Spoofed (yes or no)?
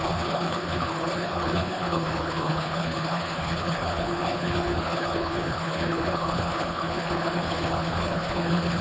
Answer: yes